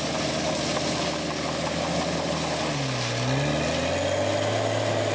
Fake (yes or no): no